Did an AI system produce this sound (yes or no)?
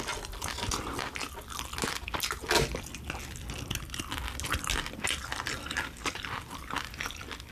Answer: no